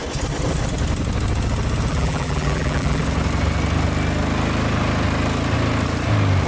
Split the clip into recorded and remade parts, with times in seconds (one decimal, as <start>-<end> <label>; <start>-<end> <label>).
0.0-1.9 recorded; 1.9-3.0 remade; 3.0-6.5 recorded